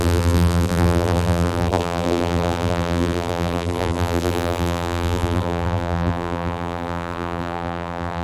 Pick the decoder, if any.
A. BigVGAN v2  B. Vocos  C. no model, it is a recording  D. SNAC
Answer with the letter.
A